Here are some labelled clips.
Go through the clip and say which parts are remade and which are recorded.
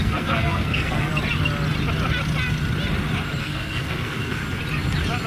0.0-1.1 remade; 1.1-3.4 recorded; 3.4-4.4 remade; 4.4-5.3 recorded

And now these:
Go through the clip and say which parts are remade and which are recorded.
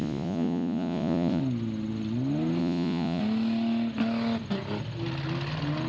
0.0-1.4 remade; 1.4-2.6 recorded; 2.6-3.2 remade; 3.2-5.9 recorded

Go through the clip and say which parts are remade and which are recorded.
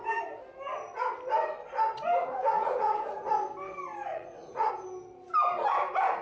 0.0-2.2 recorded; 2.2-3.3 remade; 3.3-4.1 recorded; 4.1-4.7 remade; 4.7-6.2 recorded